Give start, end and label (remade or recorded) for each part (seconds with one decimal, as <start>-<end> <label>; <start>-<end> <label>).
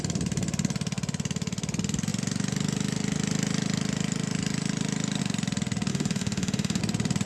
0.0-5.9 recorded; 5.9-6.8 remade; 6.8-7.3 recorded